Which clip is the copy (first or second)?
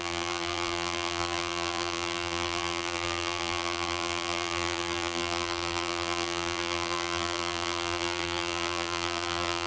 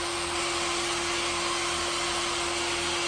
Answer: first